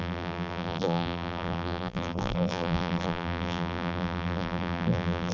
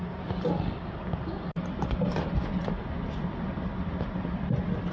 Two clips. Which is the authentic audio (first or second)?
second